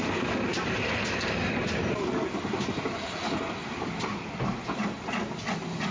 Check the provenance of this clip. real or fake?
real